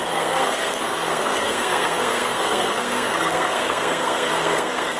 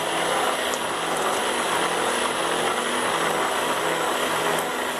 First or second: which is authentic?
second